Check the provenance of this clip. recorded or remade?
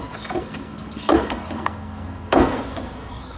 remade